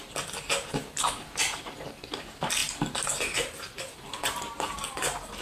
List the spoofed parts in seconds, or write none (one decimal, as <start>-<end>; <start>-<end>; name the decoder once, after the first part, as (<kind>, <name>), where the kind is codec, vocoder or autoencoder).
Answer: none